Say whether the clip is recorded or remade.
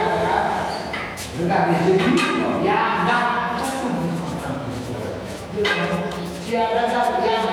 remade